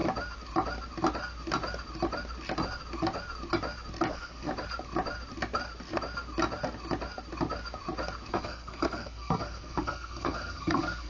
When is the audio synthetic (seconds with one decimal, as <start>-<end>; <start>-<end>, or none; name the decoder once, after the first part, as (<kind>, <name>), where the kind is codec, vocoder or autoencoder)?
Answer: 4.1-4.5 (codec, SNAC); 8.3-11.1

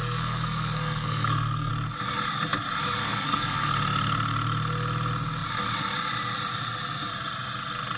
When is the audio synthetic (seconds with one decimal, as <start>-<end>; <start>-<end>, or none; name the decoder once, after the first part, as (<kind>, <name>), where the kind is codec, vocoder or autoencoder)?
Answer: 0.0-1.7 (codec, SNAC); 3.0-3.7

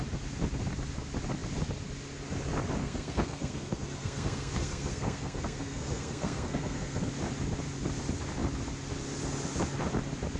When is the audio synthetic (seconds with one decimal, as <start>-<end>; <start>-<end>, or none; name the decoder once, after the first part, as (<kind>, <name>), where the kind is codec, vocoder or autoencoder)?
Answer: 2.8-7.1 (codec, SNAC)

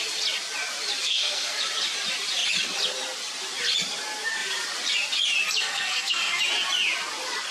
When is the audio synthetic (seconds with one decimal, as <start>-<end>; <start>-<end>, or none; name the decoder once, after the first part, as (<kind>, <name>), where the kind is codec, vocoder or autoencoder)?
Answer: 1.0-1.6 (codec, SNAC); 5.6-6.4

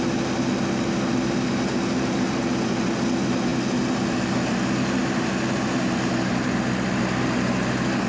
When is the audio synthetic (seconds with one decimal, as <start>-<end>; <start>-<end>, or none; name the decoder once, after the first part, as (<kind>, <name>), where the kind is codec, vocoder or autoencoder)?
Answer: none

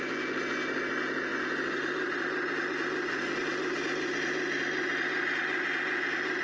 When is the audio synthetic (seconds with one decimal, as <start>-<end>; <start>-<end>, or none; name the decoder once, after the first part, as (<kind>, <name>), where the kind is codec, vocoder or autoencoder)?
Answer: none